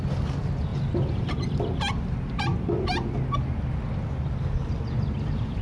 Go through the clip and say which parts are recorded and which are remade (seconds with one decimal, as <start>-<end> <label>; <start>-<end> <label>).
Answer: 0.0-5.6 recorded